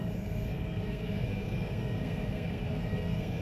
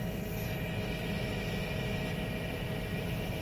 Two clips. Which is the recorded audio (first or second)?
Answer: second